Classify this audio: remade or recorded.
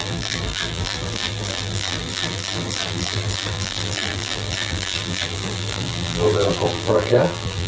remade